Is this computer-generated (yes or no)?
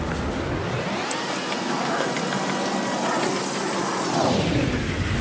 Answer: no